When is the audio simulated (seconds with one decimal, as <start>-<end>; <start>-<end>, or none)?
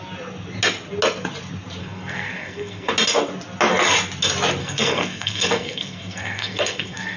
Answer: 1.8-2.9; 4.6-7.2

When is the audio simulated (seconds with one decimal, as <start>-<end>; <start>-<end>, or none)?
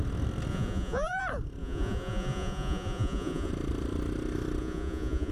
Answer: 0.5-1.2; 1.6-3.5; 4.6-5.3